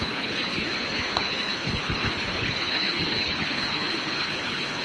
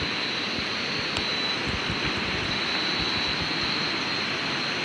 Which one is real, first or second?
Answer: second